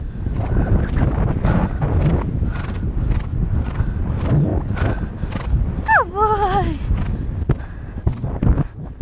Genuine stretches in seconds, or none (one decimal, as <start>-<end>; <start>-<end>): 0.0-9.0